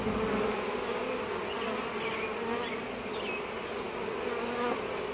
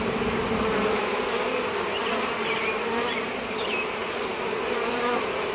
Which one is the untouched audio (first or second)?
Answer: first